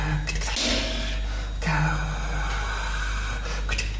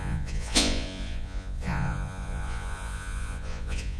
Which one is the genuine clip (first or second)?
first